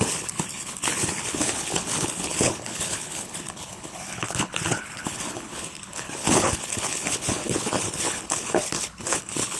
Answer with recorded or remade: remade